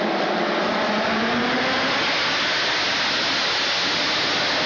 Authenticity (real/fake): real